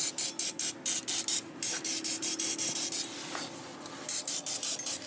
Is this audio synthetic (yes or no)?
no